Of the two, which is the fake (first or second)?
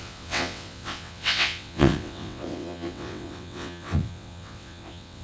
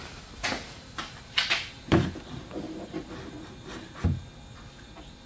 first